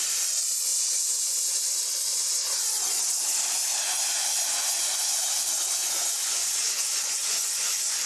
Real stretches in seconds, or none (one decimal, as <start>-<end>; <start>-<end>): 0.0-0.7; 1.5-4.1; 5.3-5.8